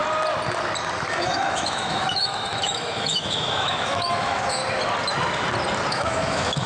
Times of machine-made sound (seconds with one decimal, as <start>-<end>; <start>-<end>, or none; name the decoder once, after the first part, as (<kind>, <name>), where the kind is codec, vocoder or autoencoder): 1.1-4.6 (autoencoder, DAC-VAE); 5.9-6.7

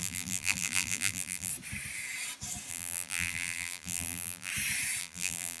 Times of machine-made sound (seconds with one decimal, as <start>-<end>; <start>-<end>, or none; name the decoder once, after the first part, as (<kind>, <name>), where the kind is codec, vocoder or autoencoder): 0.0-1.5 (vocoder, BigVGAN v2); 2.7-4.5; 5.0-5.6

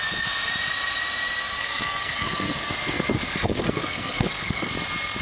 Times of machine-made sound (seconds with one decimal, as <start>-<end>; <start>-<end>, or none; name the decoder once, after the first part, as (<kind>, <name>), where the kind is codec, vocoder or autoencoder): 1.6-4.7 (codec, SNAC)

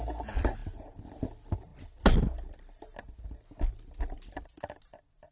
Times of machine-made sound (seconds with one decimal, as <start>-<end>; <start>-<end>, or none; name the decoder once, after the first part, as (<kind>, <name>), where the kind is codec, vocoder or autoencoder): none

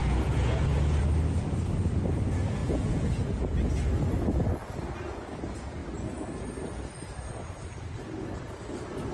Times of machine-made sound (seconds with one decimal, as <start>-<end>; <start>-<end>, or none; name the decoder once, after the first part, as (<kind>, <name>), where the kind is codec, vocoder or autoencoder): 0.0-1.0 (vocoder, Vocos); 2.6-3.5